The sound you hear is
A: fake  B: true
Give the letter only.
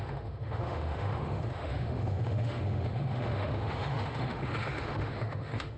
A